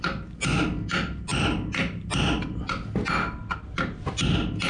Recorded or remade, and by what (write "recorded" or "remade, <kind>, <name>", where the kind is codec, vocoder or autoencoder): recorded